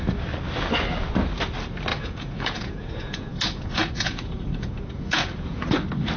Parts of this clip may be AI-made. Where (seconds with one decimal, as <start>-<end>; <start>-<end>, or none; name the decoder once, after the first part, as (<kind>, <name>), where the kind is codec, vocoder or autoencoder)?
1.9-5.6 (vocoder, Vocos)